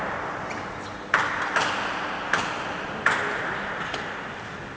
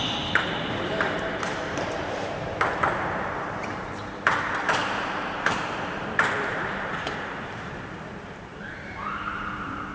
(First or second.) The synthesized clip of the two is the second